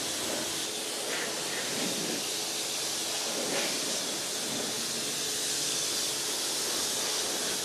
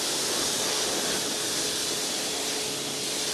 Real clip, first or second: first